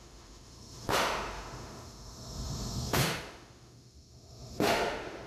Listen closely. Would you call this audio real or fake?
fake